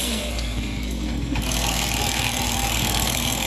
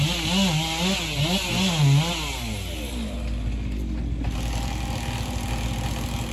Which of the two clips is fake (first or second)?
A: first